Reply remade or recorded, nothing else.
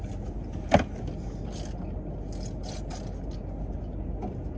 recorded